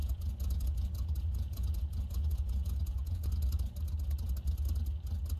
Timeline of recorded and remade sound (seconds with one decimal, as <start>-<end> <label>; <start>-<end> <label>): 0.0-3.2 remade; 3.2-5.4 recorded